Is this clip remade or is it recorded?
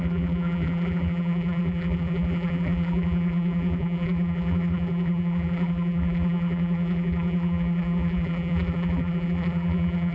remade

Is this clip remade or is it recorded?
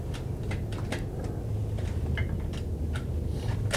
recorded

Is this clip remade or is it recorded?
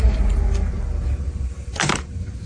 remade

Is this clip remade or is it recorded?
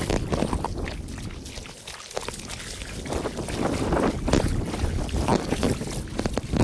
recorded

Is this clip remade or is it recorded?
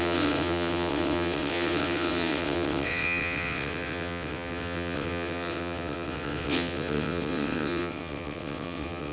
remade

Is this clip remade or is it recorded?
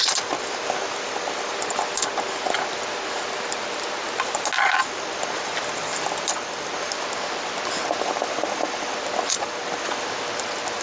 recorded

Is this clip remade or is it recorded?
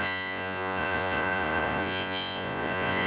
remade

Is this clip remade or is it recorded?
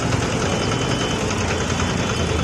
recorded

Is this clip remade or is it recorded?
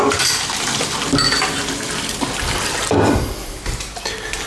recorded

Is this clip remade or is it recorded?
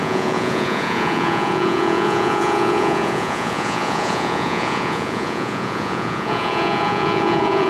remade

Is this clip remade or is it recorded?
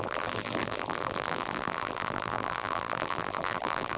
remade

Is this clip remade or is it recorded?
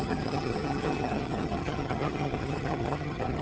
remade